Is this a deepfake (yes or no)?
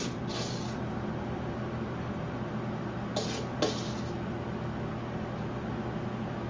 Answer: no